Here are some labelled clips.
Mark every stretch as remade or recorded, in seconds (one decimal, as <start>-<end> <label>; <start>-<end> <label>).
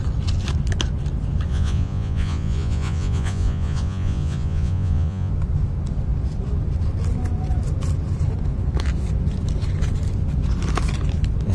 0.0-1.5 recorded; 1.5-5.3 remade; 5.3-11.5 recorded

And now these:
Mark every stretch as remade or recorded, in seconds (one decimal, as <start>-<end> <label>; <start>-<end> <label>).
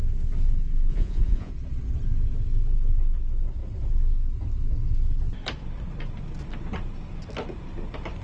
0.0-0.9 recorded; 0.9-1.5 remade; 1.5-8.2 recorded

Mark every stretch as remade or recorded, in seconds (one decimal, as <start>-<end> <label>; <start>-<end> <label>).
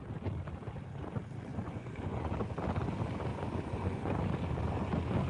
0.0-1.5 recorded; 1.5-2.3 remade; 2.3-3.3 recorded; 3.3-4.2 remade; 4.2-5.3 recorded